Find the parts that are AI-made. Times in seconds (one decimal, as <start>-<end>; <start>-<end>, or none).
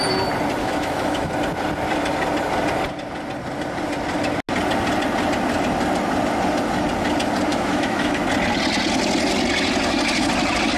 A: 0.6-1.3; 7.5-8.2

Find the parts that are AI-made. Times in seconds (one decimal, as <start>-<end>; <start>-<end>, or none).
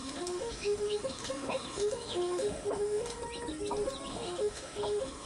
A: 0.0-3.2; 4.1-5.3